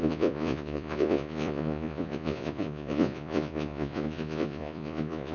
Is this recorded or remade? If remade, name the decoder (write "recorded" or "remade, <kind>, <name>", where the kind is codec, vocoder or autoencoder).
remade, vocoder, Vocos